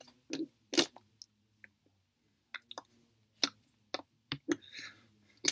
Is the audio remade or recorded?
recorded